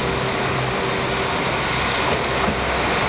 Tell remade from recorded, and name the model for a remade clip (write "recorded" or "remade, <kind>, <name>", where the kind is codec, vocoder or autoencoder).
recorded